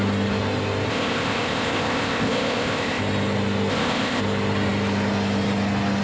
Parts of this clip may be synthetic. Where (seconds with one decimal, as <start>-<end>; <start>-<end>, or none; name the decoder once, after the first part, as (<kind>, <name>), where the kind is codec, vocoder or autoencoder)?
0.9-3.0 (codec, ZipCodec); 3.7-4.2